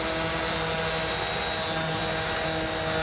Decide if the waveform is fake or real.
real